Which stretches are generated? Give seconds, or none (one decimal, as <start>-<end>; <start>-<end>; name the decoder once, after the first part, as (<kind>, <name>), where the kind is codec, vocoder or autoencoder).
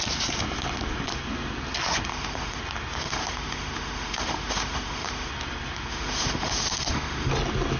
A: 2.1-2.6 (autoencoder, DAC-VAE); 3.0-5.3; 5.9-7.3